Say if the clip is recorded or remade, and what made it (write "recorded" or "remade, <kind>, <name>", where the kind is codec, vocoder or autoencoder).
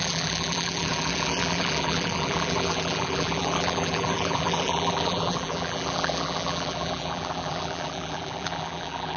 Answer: remade, vocoder, BigVGAN v2